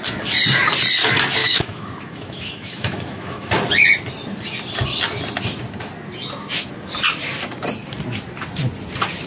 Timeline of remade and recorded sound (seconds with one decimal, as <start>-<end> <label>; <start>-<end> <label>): 0.0-1.4 recorded; 1.4-3.5 remade; 3.5-9.3 recorded